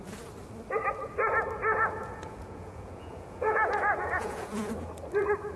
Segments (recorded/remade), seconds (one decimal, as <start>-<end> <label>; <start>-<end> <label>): 0.0-1.7 recorded; 1.7-4.7 remade; 4.7-5.6 recorded